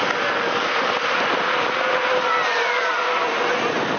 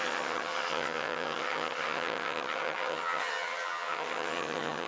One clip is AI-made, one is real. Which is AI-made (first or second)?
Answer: second